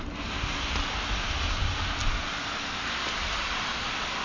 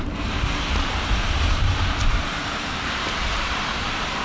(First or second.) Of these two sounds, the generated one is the second